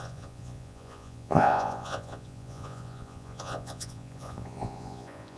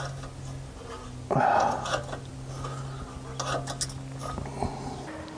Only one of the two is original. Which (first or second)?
second